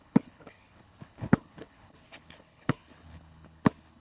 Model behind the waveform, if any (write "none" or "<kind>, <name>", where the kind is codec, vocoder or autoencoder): codec, HILCodec